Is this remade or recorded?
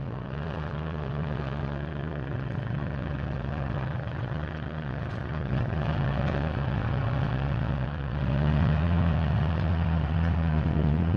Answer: remade